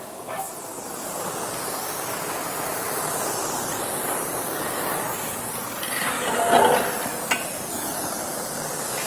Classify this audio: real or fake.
real